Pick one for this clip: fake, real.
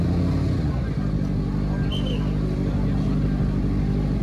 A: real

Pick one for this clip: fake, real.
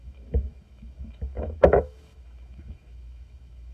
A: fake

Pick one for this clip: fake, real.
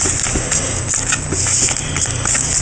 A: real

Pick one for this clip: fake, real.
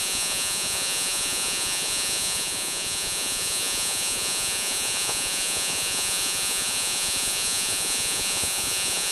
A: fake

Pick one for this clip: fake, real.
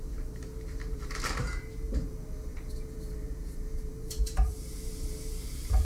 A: fake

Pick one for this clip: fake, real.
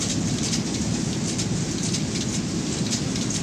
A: real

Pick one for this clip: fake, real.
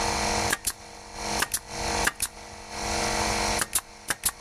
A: real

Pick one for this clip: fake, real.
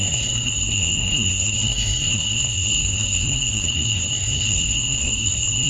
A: fake